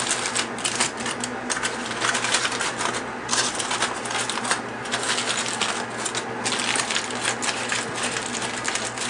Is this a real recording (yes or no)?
yes